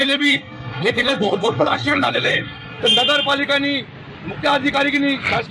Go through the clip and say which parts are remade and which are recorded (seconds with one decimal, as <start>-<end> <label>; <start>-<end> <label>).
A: 0.0-2.8 remade; 2.8-5.5 recorded